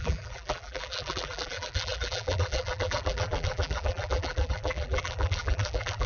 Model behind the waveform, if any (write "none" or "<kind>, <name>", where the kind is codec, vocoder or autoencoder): vocoder, BigVGAN v2